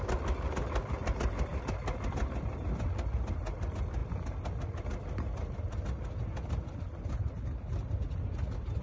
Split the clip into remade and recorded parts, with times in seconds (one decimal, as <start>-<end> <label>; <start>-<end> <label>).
0.0-8.8 recorded